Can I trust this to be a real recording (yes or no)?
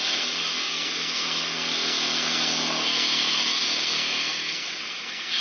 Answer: no